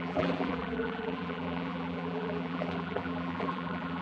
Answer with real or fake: fake